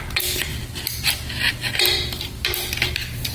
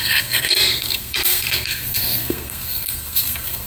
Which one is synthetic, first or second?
second